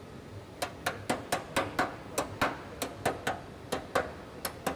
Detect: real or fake real